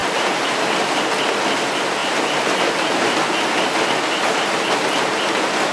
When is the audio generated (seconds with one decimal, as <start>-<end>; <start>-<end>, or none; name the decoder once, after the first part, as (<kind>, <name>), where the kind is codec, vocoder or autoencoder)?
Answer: 0.0-1.1 (vocoder, BigVGAN v2); 2.0-3.5